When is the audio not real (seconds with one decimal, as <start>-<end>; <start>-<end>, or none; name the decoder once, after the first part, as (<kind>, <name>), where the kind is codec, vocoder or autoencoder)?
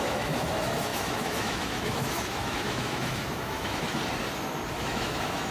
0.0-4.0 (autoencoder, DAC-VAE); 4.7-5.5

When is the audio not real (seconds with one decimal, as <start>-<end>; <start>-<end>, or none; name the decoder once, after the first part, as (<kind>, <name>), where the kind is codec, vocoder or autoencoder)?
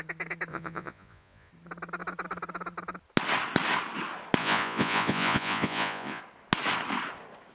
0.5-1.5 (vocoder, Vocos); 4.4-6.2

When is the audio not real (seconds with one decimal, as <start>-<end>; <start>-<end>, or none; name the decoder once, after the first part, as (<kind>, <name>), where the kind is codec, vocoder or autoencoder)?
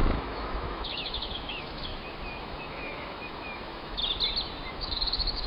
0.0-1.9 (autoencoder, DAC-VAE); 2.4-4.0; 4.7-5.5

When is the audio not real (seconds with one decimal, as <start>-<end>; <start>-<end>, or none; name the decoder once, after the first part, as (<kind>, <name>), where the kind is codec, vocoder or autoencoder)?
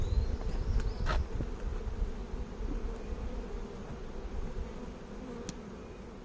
none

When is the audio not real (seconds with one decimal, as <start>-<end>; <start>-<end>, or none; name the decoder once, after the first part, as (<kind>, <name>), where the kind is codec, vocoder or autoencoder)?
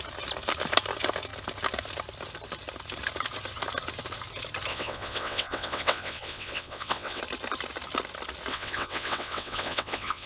4.7-7.2 (vocoder, WaveNeXt); 8.5-10.3